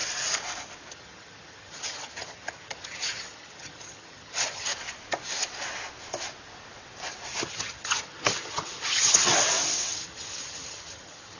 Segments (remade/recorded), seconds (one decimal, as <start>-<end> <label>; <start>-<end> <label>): 0.0-0.9 recorded; 0.9-4.7 remade; 4.7-7.4 recorded; 7.4-9.3 remade; 9.3-9.9 recorded; 9.9-11.4 remade